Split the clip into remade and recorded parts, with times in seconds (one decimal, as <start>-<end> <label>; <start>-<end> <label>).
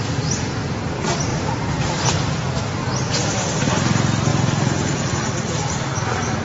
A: 0.0-1.3 recorded; 1.3-2.0 remade; 2.0-4.3 recorded; 4.3-5.1 remade; 5.1-6.4 recorded